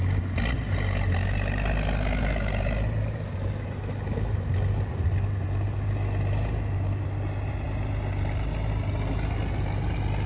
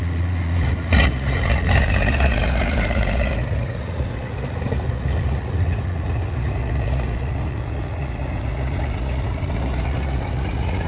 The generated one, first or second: second